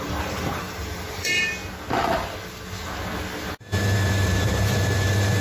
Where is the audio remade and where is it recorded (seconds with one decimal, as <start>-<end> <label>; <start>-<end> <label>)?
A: 0.0-1.6 remade; 1.6-4.1 recorded; 4.1-5.4 remade